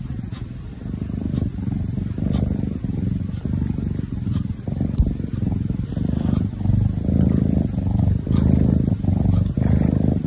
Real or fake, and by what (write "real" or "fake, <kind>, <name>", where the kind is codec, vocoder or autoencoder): real